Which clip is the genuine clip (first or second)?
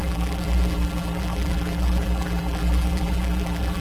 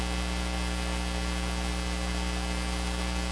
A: second